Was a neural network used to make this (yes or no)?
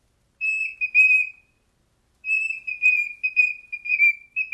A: no